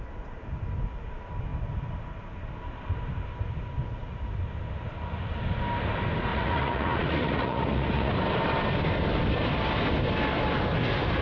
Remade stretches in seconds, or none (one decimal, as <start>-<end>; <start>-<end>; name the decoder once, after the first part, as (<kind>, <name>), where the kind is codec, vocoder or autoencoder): 6.3-8.1 (vocoder, Vocos)